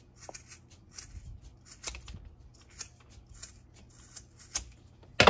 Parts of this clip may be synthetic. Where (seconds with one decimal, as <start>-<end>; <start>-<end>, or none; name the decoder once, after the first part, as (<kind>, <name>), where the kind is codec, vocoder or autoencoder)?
none